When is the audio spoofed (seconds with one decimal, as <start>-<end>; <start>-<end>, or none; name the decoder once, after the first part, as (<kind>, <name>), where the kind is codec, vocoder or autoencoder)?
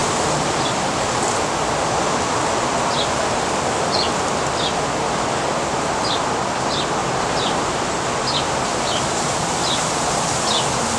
7.0-7.8 (vocoder, BigVGAN v2); 8.7-10.3